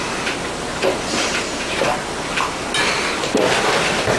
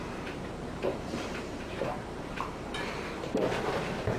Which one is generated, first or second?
second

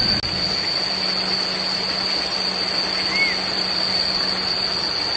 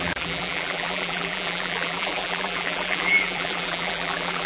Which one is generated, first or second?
second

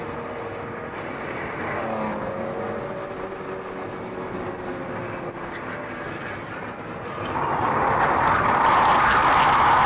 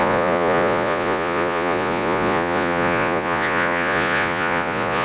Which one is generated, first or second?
second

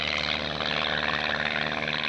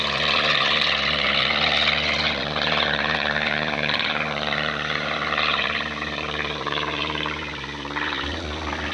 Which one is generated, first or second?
second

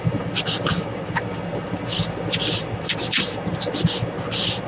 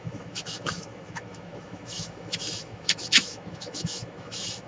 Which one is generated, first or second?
second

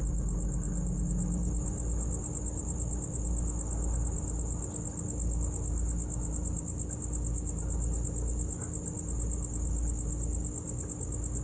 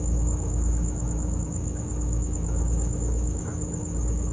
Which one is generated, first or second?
second